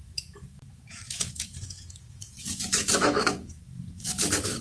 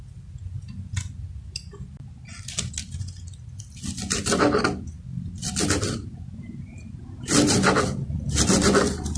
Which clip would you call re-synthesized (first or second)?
first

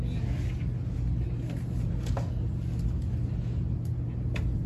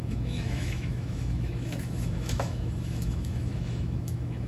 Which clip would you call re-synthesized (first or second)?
second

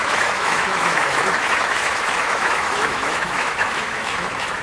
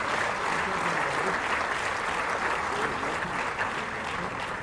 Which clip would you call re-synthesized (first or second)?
first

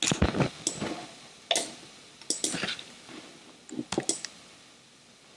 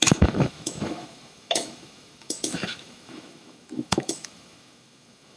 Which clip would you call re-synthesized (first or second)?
second